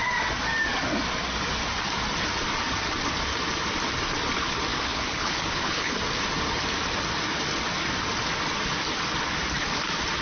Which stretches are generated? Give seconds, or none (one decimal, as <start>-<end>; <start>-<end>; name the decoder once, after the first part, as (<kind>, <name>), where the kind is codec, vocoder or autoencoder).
4.7-6.0 (codec, HILCodec)